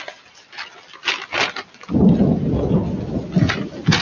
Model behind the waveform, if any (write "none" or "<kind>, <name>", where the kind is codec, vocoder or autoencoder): none